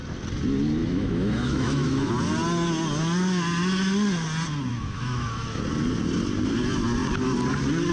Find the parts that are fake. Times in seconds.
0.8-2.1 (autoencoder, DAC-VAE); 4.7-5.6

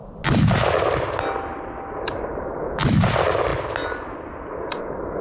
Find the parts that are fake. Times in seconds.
none

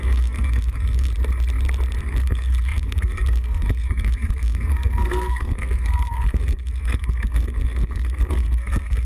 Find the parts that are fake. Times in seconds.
0.0-1.1 (codec, SNAC); 2.0-9.1

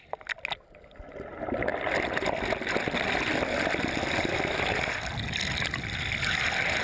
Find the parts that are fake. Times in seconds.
none

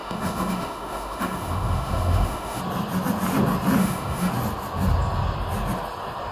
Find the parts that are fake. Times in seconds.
0.0-2.6 (autoencoder, DAC-VAE); 3.8-4.3

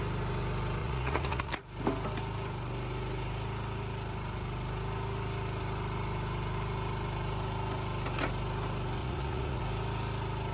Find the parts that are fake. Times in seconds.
0.8-1.5 (vocoder, Vocos); 9.0-9.6